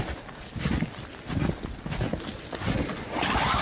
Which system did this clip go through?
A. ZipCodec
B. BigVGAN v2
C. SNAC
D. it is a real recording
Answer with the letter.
D